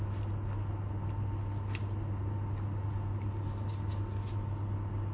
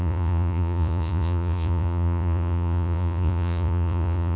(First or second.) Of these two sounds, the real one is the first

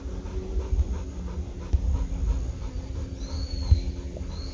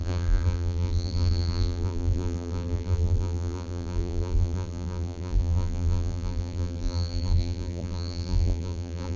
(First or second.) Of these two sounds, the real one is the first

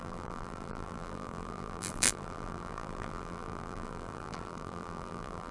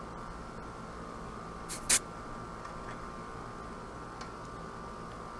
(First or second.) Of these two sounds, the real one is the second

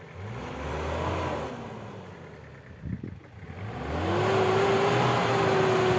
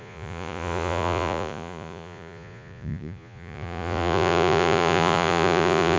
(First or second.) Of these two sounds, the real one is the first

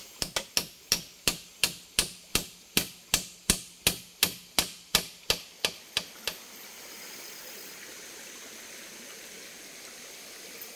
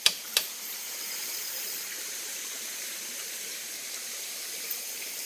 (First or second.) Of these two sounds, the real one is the first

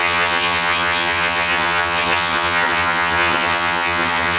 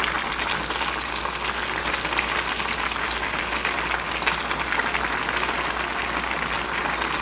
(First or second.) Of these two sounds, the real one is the second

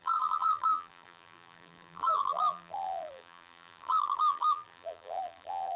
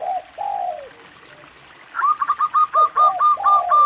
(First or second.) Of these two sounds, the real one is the second